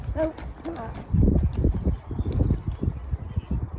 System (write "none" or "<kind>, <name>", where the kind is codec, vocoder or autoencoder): none